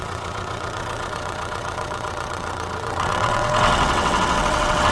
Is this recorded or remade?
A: remade